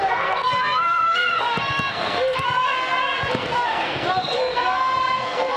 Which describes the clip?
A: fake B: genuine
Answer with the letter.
A